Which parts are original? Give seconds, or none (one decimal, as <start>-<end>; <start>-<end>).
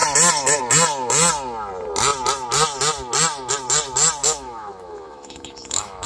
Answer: 0.0-4.2